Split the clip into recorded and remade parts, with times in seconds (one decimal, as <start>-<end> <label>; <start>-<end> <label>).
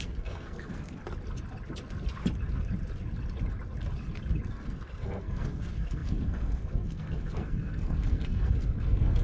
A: 0.0-1.0 remade; 1.0-4.5 recorded; 4.5-9.2 remade